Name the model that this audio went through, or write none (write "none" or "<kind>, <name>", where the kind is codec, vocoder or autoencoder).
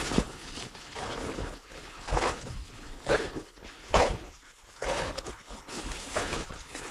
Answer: codec, HILCodec